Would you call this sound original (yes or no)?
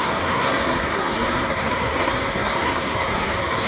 no